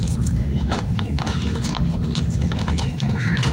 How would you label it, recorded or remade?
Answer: remade